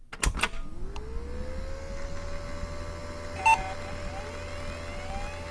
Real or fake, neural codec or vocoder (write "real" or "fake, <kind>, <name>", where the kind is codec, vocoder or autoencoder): real